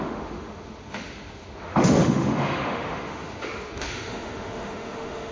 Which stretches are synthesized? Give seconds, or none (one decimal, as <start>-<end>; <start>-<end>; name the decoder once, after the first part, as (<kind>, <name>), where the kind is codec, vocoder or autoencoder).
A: 0.0-5.3 (autoencoder, DAC-VAE)